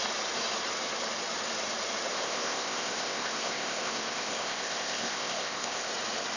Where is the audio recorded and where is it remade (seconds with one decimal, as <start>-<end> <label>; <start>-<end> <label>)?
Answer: 0.0-2.1 recorded; 2.1-5.9 remade; 5.9-6.4 recorded